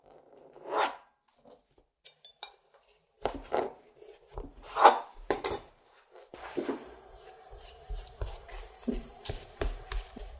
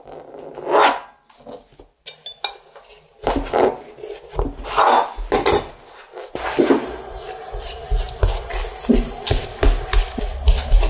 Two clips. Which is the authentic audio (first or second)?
second